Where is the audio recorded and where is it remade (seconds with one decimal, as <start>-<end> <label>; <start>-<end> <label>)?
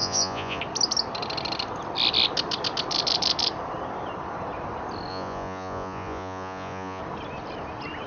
0.0-0.6 remade; 0.6-5.1 recorded; 5.1-7.0 remade; 7.0-8.1 recorded